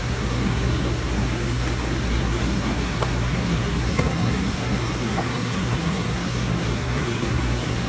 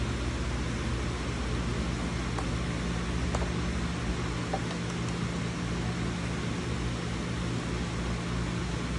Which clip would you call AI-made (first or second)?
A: first